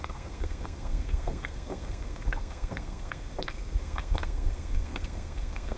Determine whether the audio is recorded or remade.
remade